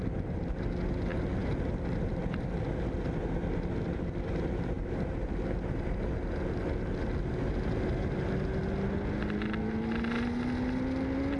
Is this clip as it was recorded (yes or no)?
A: yes